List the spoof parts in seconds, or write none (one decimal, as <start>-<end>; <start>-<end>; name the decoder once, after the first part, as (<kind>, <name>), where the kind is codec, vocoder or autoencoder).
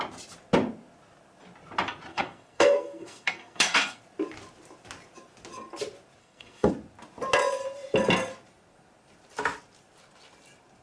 2.1-4.0 (codec, SNAC); 6.2-6.7